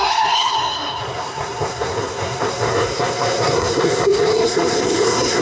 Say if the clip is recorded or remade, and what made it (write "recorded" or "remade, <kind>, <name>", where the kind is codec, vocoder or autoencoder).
remade, codec, SNAC